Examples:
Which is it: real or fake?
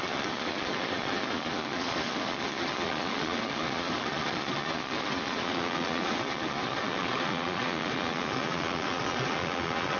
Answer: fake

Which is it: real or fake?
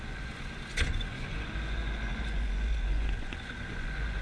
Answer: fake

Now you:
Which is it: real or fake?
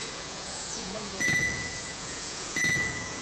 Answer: fake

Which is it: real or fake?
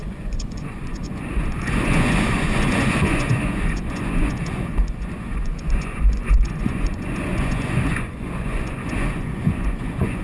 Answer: fake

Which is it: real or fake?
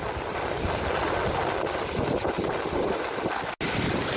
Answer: real